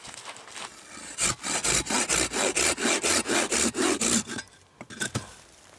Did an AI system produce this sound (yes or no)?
no